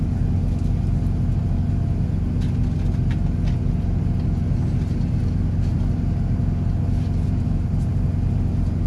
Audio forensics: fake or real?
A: real